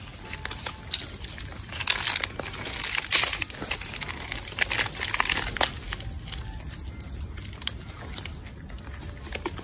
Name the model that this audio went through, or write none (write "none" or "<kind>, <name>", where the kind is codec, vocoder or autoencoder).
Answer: none